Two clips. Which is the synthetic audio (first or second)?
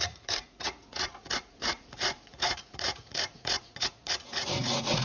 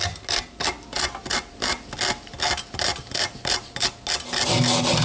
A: first